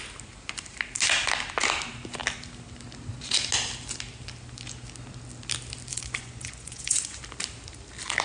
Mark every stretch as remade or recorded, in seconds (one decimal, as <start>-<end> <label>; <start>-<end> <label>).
0.0-5.9 recorded; 5.9-7.2 remade; 7.2-8.2 recorded